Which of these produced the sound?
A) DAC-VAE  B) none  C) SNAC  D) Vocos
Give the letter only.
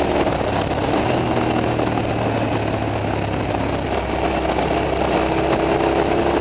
B